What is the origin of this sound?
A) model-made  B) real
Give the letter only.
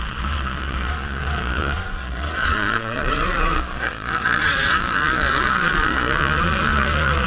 A